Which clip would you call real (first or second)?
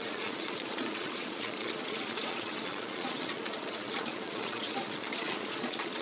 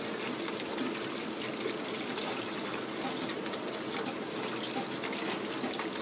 second